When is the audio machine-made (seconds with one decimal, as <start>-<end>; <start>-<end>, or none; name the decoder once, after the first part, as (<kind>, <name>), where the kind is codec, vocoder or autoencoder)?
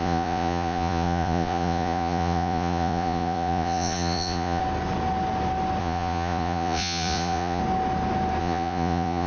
0.0-4.6 (vocoder, Vocos); 5.8-7.6; 8.4-9.3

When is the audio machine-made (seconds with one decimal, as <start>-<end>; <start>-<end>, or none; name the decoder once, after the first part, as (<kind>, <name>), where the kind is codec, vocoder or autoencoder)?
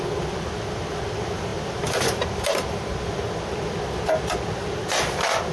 none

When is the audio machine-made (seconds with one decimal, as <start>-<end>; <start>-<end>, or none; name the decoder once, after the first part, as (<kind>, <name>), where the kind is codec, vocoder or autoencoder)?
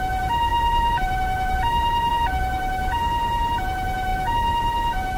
none